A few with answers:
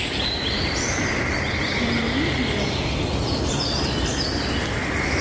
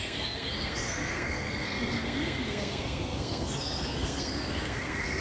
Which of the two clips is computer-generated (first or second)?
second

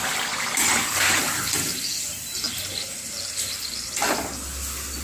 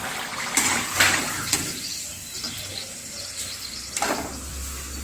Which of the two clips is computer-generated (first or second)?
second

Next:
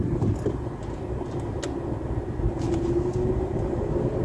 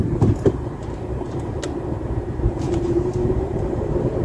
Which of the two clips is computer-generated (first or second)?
second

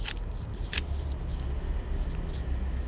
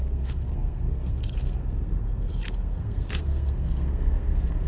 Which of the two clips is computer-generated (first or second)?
second